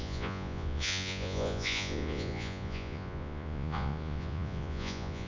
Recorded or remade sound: remade